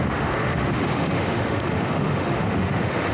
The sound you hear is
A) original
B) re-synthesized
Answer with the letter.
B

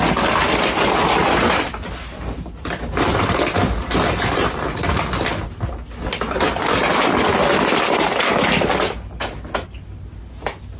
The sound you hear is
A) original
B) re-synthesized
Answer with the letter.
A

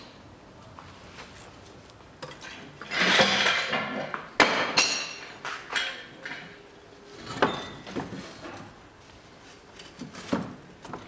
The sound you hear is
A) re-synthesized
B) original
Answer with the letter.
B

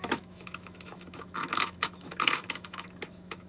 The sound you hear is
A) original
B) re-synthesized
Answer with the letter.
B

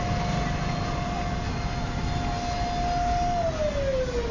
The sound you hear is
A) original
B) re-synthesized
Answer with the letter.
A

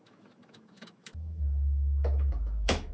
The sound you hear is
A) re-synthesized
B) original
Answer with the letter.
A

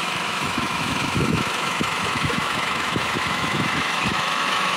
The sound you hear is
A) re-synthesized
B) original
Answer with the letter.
A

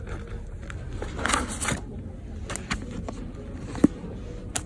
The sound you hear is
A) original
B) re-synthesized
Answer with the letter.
A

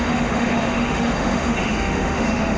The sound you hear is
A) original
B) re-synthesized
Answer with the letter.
B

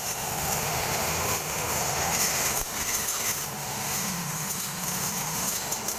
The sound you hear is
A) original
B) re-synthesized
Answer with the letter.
B